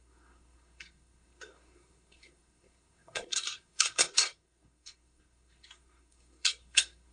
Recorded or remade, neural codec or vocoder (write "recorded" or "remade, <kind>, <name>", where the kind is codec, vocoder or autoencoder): remade, codec, SNAC